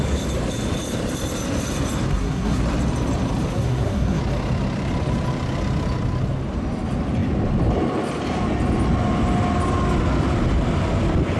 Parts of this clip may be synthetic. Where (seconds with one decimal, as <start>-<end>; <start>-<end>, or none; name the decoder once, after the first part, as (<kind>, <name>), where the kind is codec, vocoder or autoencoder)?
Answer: 2.1-2.6 (codec, SNAC); 3.5-4.2